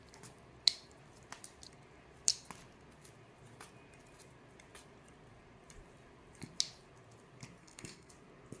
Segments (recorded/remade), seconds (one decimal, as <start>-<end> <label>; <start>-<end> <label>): 0.0-7.6 recorded; 7.6-8.1 remade; 8.1-8.6 recorded